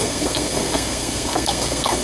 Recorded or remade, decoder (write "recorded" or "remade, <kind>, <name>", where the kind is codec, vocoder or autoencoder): remade, codec, SNAC